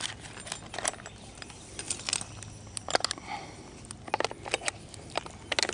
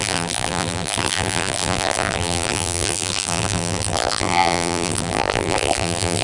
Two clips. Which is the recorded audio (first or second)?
first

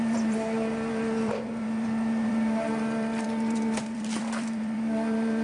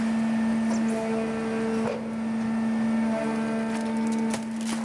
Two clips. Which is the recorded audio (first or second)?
second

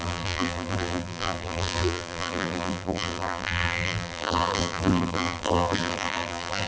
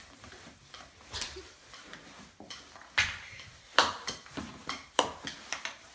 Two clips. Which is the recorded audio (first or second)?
second